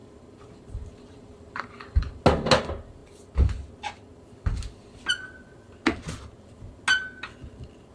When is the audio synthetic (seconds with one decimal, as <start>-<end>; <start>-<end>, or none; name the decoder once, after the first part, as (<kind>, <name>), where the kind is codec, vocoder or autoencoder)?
0.0-2.2 (vocoder, BigVGAN v2)

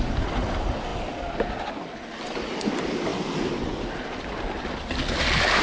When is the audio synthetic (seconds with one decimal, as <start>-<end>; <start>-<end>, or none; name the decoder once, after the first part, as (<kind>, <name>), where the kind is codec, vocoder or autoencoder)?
none